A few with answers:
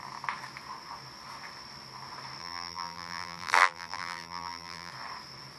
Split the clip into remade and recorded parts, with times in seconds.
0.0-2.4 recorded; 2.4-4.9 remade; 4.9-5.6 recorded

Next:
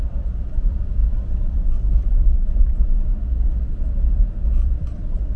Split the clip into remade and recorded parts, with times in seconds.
0.0-5.4 remade

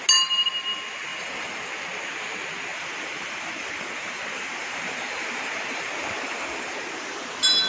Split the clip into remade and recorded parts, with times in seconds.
0.0-1.1 recorded; 1.1-1.7 remade; 1.7-2.7 recorded; 2.7-7.3 remade; 7.3-7.7 recorded

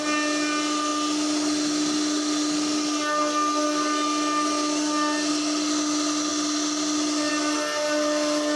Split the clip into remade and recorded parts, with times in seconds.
0.0-8.6 recorded

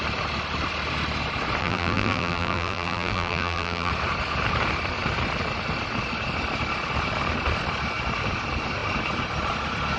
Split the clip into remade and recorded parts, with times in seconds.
0.0-1.6 recorded; 1.6-3.9 remade; 3.9-10.0 recorded